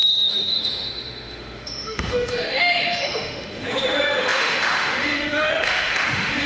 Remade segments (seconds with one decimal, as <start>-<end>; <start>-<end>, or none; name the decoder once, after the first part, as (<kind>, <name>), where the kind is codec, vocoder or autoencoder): 0.0-6.5 (autoencoder, DAC-VAE)